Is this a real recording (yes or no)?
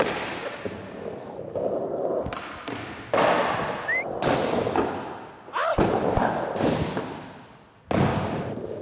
yes